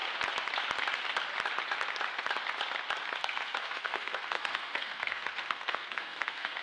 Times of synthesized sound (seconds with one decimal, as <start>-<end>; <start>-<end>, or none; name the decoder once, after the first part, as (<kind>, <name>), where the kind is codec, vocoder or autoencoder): 3.2-6.6 (codec, SNAC)

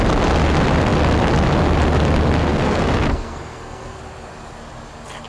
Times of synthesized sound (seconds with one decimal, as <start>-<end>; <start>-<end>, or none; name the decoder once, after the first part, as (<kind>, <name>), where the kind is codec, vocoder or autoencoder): 2.4-4.0 (codec, SNAC)

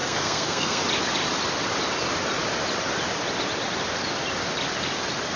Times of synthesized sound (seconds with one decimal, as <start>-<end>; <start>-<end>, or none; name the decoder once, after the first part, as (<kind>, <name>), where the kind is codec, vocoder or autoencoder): 0.0-0.8 (codec, SNAC)

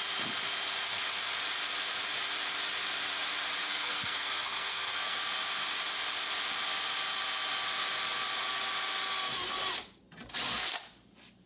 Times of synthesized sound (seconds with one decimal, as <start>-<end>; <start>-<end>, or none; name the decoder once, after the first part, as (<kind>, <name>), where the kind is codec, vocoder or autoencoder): 3.6-5.2 (codec, SNAC)

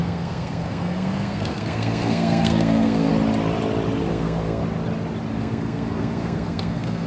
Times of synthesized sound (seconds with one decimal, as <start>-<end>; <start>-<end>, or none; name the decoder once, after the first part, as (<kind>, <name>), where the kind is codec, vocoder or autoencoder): 0.0-3.1 (codec, SNAC); 4.1-4.6; 5.4-7.1